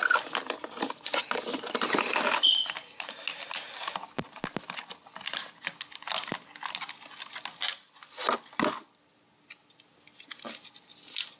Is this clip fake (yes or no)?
no